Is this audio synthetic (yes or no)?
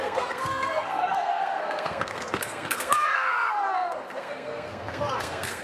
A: yes